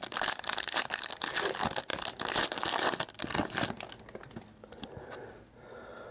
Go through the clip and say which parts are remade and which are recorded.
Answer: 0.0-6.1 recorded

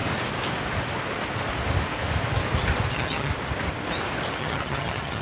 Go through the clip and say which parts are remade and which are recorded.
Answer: 0.0-2.9 recorded; 2.9-3.3 remade; 3.3-4.4 recorded; 4.4-5.2 remade

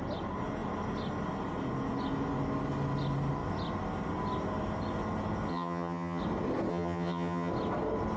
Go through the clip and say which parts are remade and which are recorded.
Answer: 0.0-5.5 recorded; 5.5-6.2 remade; 6.2-6.7 recorded; 6.7-7.5 remade; 7.5-8.2 recorded

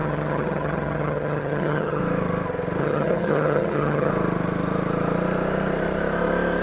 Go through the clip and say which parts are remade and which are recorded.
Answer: 0.0-2.0 remade; 2.0-2.8 recorded; 2.8-4.1 remade; 4.1-6.6 recorded

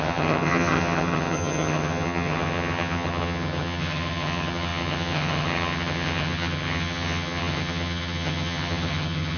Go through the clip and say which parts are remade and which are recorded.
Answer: 0.0-9.4 remade

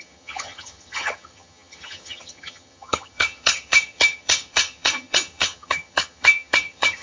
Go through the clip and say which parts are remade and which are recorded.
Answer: 0.0-7.0 remade